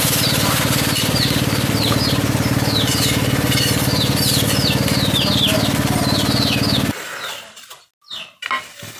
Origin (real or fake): real